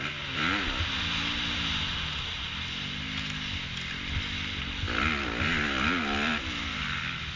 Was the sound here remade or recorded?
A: recorded